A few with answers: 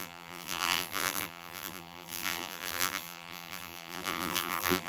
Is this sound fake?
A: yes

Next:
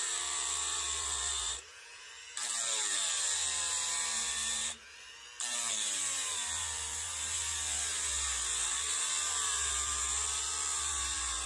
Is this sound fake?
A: yes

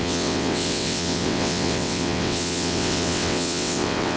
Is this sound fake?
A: yes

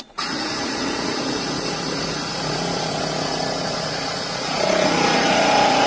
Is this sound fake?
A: yes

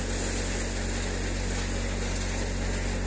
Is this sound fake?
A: no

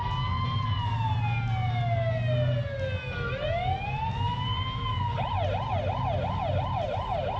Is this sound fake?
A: no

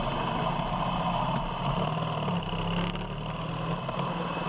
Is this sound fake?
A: no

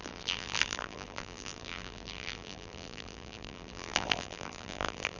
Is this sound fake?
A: yes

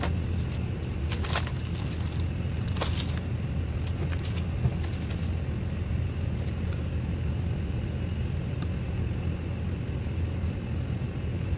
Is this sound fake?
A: no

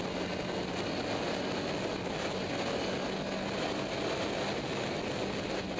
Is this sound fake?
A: no